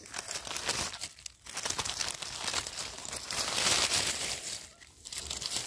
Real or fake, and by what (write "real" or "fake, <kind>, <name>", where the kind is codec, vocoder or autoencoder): real